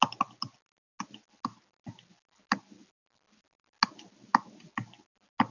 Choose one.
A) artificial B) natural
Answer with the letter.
B